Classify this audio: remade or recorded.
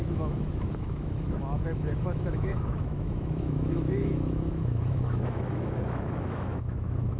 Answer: remade